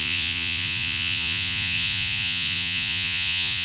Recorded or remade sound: remade